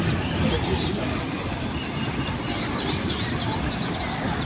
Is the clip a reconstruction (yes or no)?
no